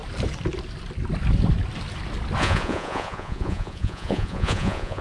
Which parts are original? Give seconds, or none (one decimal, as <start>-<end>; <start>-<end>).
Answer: 0.0-2.4